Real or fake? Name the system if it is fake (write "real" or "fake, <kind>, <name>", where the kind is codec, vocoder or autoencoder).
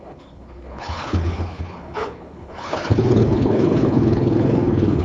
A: fake, codec, HILCodec